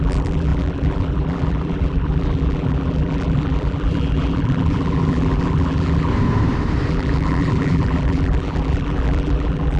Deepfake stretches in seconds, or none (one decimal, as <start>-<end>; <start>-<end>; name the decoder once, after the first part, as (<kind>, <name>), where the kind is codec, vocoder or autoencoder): 0.0-6.1 (vocoder, BigVGAN v2); 6.9-9.8